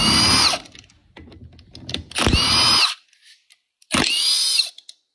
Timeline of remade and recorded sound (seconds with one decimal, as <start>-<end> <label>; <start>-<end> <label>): 0.0-5.1 recorded

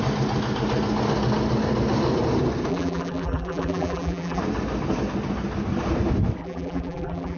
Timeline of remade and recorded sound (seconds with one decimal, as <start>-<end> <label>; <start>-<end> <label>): 0.0-2.7 recorded; 2.7-4.4 remade; 4.4-6.4 recorded; 6.4-7.4 remade

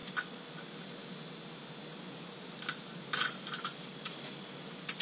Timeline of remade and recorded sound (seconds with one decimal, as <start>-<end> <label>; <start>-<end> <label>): 0.0-5.0 recorded

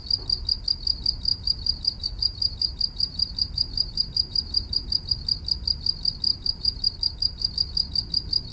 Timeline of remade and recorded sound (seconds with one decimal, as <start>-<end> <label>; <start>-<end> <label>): 0.0-1.3 recorded; 1.3-5.1 remade; 5.1-6.3 recorded; 6.3-7.5 remade; 7.5-8.5 recorded

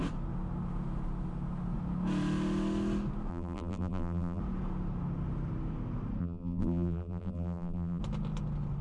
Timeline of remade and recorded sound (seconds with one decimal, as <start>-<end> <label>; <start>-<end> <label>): 0.0-3.3 recorded; 3.3-4.4 remade; 4.4-6.2 recorded; 6.2-8.0 remade; 8.0-8.8 recorded

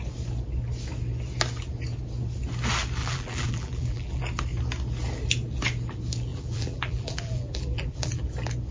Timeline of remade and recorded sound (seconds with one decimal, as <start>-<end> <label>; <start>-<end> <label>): 0.0-3.0 recorded; 3.0-4.2 remade; 4.2-6.3 recorded; 6.3-8.2 remade; 8.2-8.7 recorded

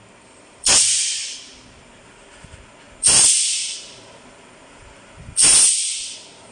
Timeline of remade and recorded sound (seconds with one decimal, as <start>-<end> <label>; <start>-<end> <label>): 0.0-6.5 recorded